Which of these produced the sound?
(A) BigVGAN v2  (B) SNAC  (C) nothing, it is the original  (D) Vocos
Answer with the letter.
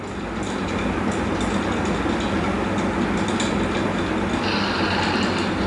C